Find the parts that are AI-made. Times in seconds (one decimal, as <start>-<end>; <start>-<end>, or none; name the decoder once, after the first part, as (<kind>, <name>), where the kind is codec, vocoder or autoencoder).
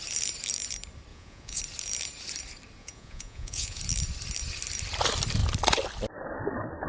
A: 1.1-1.6 (vocoder, Vocos); 2.8-3.8